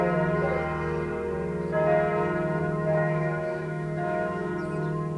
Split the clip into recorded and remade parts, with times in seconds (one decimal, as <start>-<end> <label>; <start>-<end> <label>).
0.0-2.6 recorded; 2.6-4.5 remade; 4.5-5.2 recorded